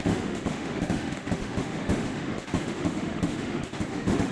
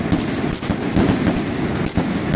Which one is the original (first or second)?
second